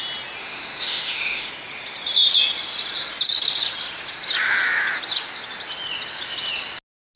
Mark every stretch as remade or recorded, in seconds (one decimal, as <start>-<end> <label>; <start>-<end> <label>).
0.0-0.4 recorded; 0.4-1.5 remade; 1.5-7.2 recorded